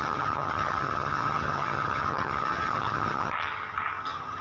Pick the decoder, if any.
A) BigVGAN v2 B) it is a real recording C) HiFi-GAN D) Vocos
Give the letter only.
C